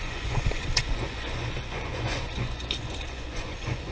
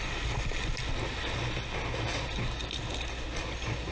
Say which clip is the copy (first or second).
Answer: first